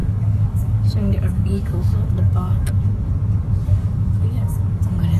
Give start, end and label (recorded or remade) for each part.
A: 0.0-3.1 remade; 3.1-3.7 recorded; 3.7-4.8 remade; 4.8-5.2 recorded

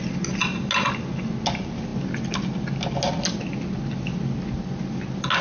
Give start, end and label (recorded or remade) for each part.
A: 0.0-5.4 recorded

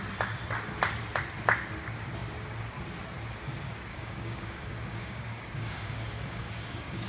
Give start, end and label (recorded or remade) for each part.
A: 0.0-3.9 recorded; 3.9-7.1 remade

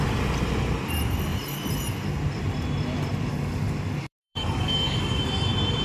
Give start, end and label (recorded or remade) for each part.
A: 0.0-3.3 recorded; 3.3-5.2 remade; 5.2-5.8 recorded

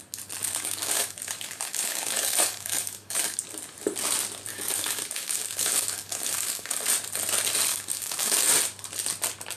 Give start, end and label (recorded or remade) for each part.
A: 0.0-0.4 recorded; 0.4-3.4 remade; 3.4-4.5 recorded; 4.5-6.8 remade; 6.8-7.7 recorded; 7.7-8.5 remade; 8.5-9.6 recorded